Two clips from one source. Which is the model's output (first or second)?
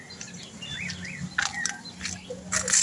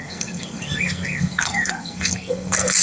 second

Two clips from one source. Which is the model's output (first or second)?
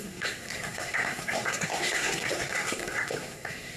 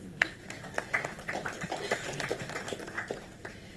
first